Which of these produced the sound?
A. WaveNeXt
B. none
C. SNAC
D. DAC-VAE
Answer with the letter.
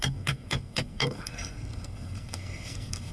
C